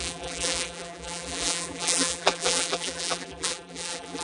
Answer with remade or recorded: remade